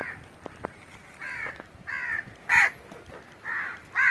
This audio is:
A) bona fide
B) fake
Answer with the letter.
A